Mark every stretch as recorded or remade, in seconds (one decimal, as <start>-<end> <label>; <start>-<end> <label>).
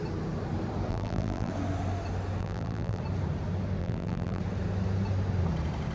0.0-0.9 recorded; 0.9-1.5 remade; 1.5-2.4 recorded; 2.4-3.0 remade; 3.0-3.8 recorded; 3.8-4.4 remade; 4.4-5.9 recorded